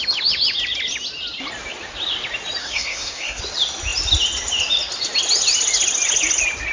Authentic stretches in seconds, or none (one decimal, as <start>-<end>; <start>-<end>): 0.0-2.6; 3.4-6.7